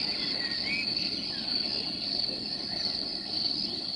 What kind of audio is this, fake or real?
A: real